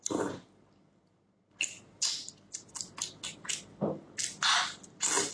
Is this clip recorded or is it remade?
recorded